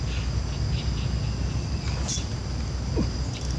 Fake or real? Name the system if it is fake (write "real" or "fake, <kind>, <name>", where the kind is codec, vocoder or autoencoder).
real